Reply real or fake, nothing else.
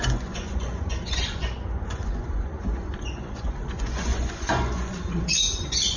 fake